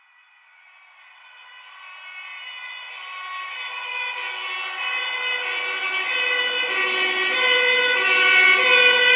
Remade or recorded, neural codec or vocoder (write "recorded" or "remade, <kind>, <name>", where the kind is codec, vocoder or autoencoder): recorded